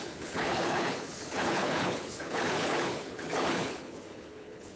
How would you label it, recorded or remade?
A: remade